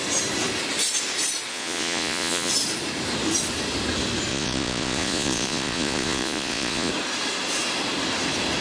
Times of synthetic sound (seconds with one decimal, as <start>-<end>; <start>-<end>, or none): 1.5-2.5; 4.3-6.9